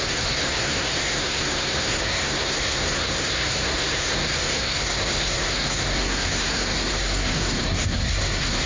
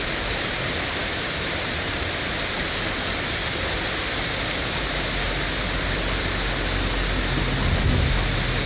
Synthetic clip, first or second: first